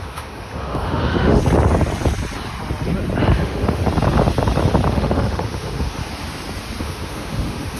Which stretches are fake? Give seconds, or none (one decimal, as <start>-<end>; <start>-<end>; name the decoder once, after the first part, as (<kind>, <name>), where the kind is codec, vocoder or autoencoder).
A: 0.0-1.4 (autoencoder, DAC-VAE); 3.2-3.8; 4.9-6.0; 6.8-7.8